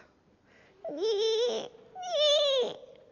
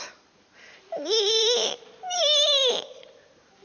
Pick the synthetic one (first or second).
second